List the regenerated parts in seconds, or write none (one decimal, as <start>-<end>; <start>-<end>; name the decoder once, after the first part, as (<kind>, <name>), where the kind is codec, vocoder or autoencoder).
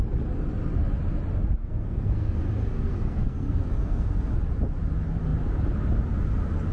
1.6-4.3 (codec, SNAC)